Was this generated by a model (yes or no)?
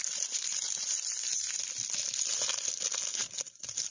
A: no